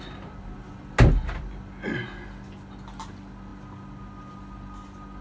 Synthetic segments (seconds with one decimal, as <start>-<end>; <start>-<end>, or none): none